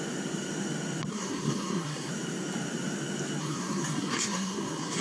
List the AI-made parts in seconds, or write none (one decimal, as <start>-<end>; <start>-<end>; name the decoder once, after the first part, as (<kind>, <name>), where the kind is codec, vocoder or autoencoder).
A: 1.1-2.1 (codec, SNAC); 3.4-5.0